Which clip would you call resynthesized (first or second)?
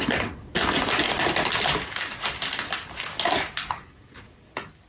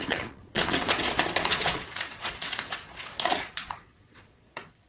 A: second